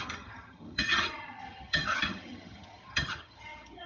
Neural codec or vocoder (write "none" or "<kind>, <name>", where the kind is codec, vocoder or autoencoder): vocoder, HiFi-GAN